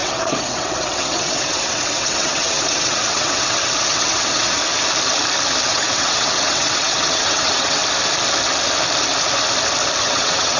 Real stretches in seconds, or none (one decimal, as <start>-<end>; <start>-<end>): 4.6-5.7; 7.8-10.0